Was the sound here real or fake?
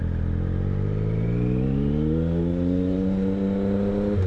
real